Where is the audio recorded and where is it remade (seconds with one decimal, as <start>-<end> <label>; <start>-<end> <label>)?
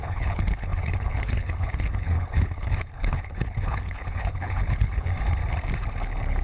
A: 0.0-5.1 remade; 5.1-6.0 recorded; 6.0-6.4 remade